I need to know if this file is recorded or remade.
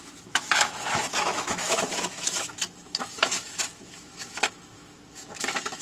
remade